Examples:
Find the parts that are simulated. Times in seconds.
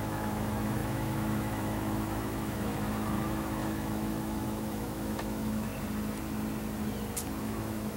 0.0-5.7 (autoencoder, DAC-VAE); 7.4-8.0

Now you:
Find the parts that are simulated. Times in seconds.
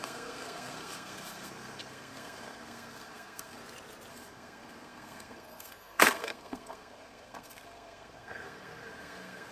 0.0-3.6 (codec, SNAC); 4.1-9.5